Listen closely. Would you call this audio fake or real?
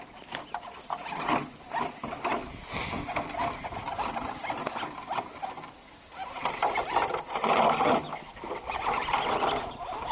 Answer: real